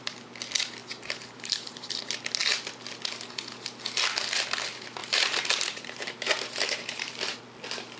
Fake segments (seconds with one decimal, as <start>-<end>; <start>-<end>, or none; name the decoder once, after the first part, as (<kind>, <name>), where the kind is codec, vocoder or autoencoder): 0.8-2.0 (vocoder, BigVGAN v2); 5.0-7.4